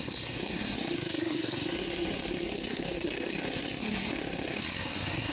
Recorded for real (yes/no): no